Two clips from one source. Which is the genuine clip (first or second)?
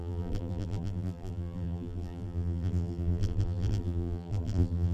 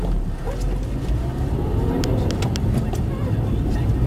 second